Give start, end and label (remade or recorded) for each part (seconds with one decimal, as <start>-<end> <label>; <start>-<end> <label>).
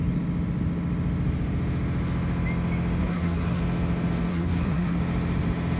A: 0.0-3.0 recorded; 3.0-3.6 remade; 3.6-4.3 recorded; 4.3-5.0 remade; 5.0-5.8 recorded